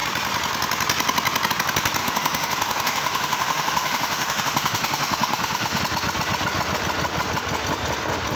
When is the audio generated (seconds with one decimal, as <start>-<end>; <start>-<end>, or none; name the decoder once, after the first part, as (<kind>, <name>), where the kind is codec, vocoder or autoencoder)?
2.0-5.8 (autoencoder, DAC-VAE)